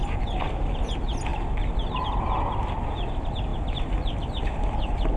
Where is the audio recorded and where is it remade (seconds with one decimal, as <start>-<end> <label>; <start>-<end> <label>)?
0.0-5.2 recorded